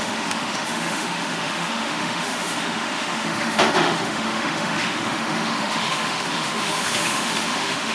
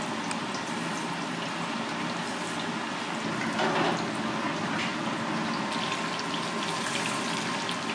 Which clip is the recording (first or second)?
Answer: second